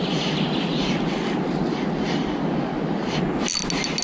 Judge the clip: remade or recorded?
recorded